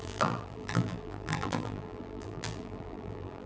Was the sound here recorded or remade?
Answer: remade